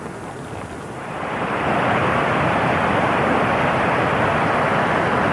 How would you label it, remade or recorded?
recorded